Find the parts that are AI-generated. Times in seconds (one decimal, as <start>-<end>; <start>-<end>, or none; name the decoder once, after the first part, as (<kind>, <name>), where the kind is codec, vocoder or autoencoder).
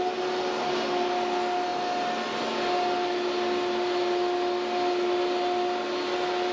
none